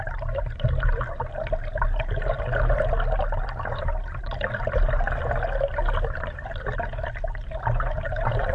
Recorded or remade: recorded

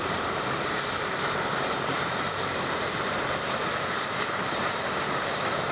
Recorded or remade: remade